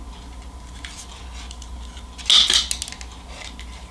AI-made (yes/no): no